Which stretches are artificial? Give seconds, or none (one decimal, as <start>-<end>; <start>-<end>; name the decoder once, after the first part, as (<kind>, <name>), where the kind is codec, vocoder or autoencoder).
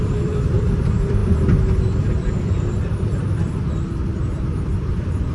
0.0-1.2 (vocoder, BigVGAN v2); 2.3-5.3